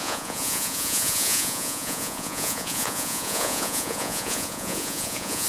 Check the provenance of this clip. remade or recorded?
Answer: remade